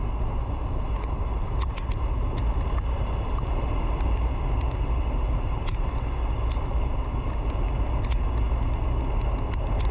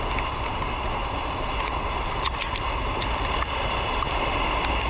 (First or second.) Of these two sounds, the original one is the first